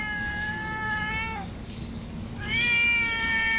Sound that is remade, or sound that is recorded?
remade